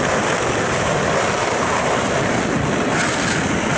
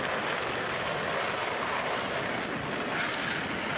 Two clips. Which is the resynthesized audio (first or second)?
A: first